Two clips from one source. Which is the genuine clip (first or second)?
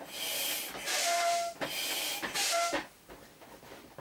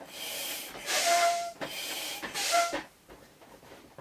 first